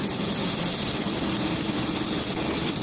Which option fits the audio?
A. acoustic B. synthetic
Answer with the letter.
A